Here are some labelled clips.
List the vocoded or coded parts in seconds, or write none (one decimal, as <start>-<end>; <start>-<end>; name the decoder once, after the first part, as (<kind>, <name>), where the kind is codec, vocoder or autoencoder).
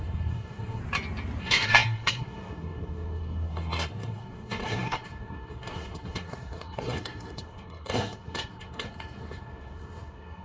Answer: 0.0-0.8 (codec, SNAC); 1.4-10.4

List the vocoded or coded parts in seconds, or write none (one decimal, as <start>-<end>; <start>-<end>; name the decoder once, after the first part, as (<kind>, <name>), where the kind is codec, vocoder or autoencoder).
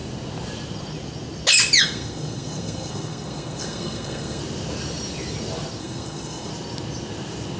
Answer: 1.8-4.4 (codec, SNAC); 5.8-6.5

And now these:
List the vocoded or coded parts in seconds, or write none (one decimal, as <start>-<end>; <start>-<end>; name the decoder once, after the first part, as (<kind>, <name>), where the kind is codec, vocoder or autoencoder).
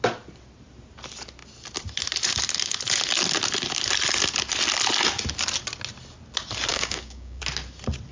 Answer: 6.7-7.4 (codec, DAC)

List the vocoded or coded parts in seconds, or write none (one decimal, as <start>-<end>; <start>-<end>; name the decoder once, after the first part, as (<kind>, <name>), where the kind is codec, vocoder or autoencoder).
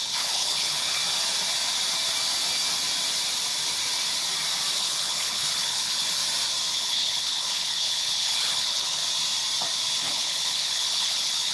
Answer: 0.0-1.0 (codec, HILCodec); 4.7-6.2; 6.7-9.0; 10.0-11.5